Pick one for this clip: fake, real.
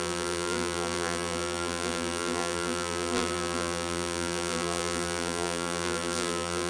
fake